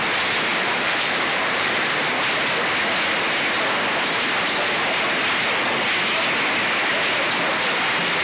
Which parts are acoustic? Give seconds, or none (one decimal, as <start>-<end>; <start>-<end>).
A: 0.0-0.5; 2.0-8.2